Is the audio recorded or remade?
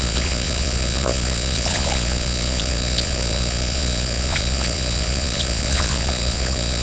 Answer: remade